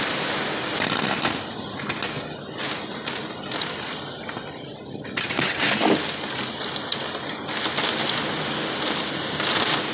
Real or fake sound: real